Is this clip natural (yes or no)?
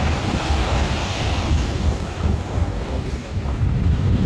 no